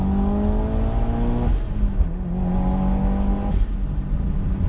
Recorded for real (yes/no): yes